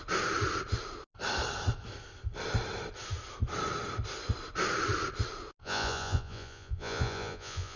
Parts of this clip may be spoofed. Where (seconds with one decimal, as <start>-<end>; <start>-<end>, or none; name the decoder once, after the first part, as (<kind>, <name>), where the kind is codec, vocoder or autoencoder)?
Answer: 5.6-7.8 (vocoder, Vocos)